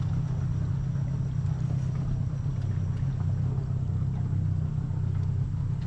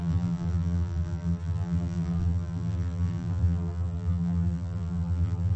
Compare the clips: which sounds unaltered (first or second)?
first